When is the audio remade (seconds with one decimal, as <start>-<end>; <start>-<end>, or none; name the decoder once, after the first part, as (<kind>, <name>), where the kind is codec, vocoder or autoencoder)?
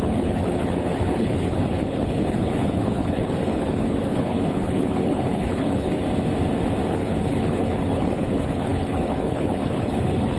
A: 0.0-6.0 (codec, HILCodec); 6.9-10.4